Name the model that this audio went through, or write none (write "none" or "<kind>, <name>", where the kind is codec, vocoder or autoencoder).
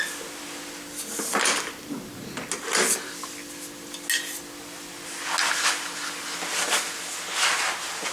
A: none